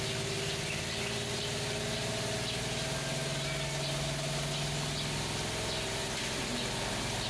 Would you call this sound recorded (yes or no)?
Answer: yes